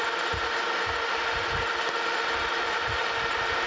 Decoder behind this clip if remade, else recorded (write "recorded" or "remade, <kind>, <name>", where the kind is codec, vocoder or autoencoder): recorded